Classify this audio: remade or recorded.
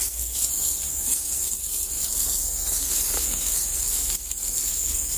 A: remade